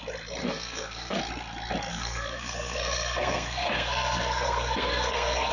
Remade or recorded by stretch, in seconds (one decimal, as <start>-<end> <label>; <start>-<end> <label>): 0.0-0.4 recorded; 0.4-1.2 remade; 1.2-1.9 recorded; 1.9-5.5 remade

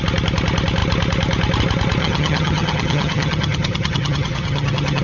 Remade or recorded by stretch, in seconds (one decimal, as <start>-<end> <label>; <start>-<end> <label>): 0.0-2.0 recorded; 2.0-5.0 remade

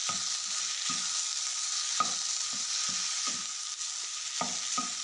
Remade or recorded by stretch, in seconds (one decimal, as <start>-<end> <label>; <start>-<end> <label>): 0.0-5.0 recorded